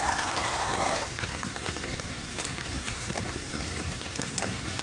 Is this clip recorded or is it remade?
remade